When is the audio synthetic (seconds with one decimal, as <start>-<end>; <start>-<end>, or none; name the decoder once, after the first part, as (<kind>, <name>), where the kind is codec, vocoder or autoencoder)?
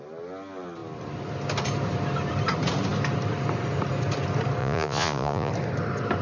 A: 4.6-5.5 (vocoder, Vocos)